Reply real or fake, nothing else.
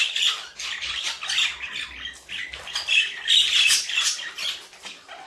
fake